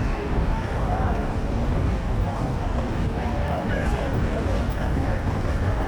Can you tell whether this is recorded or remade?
remade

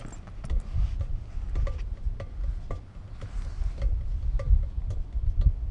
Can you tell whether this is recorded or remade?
recorded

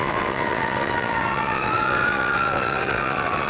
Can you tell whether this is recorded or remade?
remade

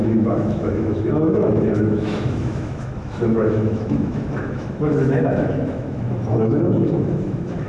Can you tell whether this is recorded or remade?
remade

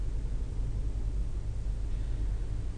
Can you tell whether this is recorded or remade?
recorded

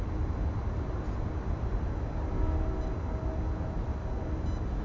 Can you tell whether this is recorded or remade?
recorded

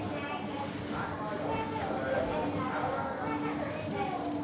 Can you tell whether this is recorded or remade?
recorded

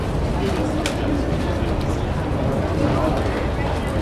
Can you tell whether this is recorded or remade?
recorded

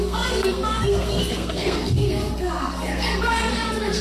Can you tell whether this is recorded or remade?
remade